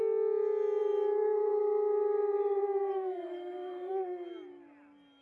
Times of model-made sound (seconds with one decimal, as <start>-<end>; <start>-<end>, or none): 0.8-3.9